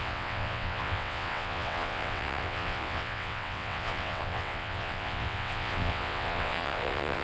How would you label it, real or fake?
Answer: fake